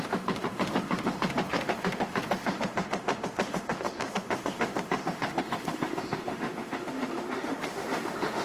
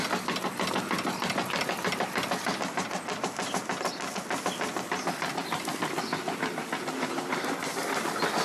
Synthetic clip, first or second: first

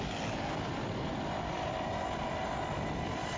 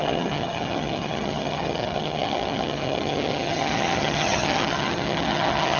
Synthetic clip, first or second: second